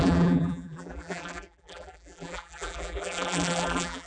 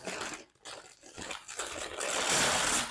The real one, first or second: second